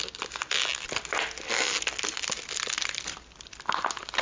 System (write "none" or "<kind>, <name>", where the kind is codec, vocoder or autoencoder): none